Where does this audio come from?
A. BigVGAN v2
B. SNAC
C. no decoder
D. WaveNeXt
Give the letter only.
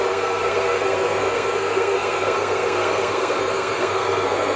B